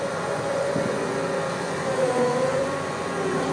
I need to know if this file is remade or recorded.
remade